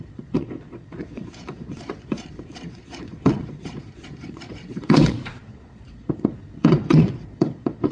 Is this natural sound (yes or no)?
no